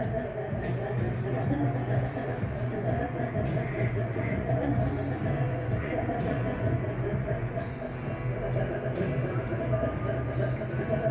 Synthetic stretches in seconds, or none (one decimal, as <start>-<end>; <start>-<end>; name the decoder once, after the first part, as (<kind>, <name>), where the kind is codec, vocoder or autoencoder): 1.8-4.7 (vocoder, Vocos); 5.5-7.8